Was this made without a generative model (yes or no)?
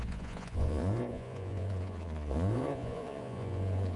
no